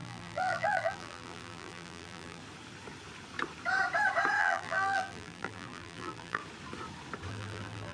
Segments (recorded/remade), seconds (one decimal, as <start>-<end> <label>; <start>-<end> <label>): 0.0-2.4 remade; 2.4-4.4 recorded; 4.4-6.4 remade; 6.4-7.3 recorded; 7.3-7.9 remade